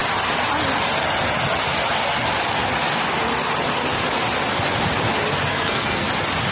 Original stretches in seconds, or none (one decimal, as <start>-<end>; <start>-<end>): 0.0-5.5; 6.1-6.5